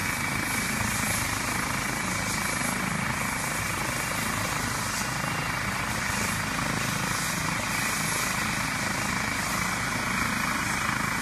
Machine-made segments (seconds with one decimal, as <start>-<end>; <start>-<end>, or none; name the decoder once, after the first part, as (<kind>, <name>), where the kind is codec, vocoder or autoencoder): none